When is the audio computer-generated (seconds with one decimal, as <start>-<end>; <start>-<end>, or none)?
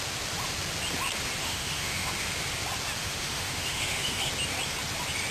1.4-2.1; 3.0-4.3